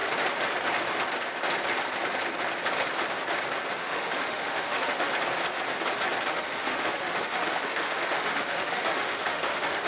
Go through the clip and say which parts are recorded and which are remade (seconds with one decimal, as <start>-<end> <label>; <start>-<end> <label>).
0.0-3.8 recorded; 3.8-5.1 remade; 5.1-6.3 recorded; 6.3-9.9 remade